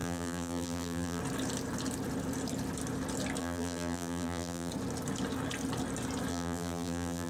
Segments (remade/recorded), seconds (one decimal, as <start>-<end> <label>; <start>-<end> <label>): 0.0-1.2 remade; 1.2-3.4 recorded; 3.4-4.7 remade; 4.7-6.3 recorded; 6.3-7.3 remade